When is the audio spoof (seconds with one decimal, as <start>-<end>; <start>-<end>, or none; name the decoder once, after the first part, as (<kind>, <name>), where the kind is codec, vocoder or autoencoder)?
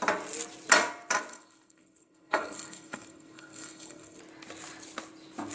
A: 1.3-4.2 (codec, SNAC)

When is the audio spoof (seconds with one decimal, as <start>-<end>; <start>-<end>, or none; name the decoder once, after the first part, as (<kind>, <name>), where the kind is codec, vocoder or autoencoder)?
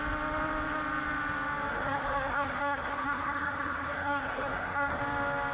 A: 1.7-5.0 (codec, SNAC)